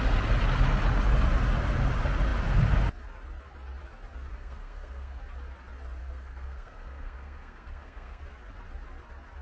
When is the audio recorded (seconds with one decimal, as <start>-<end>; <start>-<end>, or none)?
0.0-4.3; 5.2-6.0; 8.2-9.4